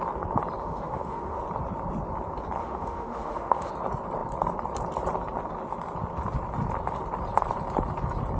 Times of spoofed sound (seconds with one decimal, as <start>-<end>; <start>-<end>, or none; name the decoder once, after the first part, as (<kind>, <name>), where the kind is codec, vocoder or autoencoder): 0.6-1.4 (autoencoder, DAC-VAE); 2.6-3.7